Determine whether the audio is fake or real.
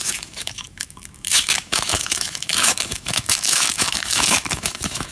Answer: fake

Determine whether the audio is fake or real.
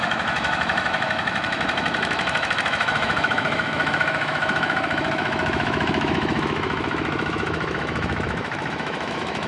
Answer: fake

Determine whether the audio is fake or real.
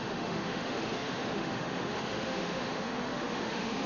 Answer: fake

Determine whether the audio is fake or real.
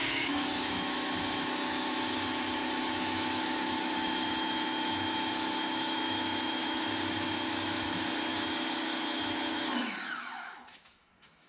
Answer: fake